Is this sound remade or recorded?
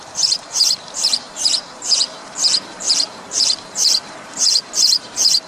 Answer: remade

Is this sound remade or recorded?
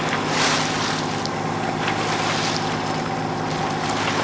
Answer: recorded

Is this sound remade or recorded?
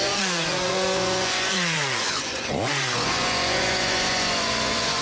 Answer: remade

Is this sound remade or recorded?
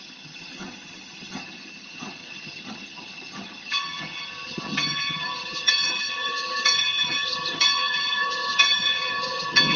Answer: remade